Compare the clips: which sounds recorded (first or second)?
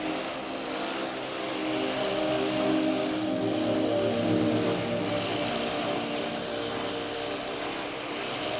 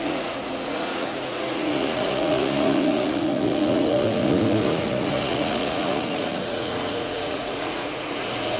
first